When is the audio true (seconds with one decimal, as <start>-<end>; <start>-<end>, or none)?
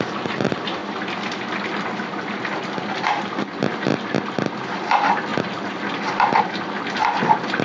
0.0-7.6